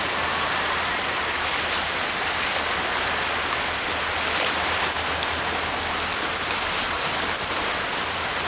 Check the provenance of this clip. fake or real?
real